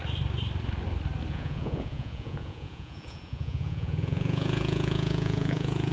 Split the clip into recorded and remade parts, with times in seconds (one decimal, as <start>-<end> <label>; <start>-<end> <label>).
0.0-1.3 recorded; 1.3-5.9 remade